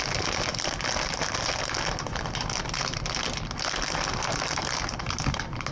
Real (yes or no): yes